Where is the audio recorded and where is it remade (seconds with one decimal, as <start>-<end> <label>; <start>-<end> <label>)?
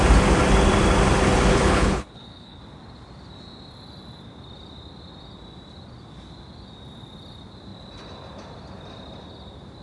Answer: 0.0-1.5 recorded; 1.5-2.6 remade; 2.6-9.8 recorded